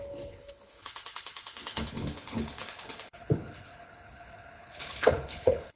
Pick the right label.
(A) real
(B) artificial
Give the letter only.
B